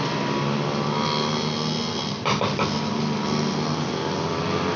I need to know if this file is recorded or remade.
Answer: recorded